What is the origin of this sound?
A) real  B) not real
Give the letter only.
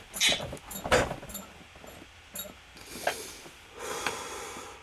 A